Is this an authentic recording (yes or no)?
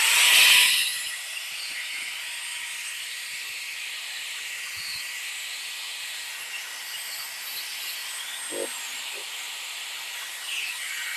yes